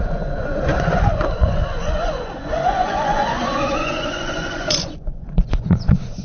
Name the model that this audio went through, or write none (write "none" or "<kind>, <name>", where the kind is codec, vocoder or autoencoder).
vocoder, Vocos